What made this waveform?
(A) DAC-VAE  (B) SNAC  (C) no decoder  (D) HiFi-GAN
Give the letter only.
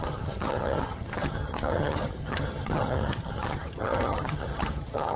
D